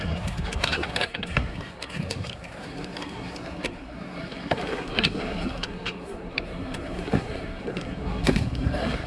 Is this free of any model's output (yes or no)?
no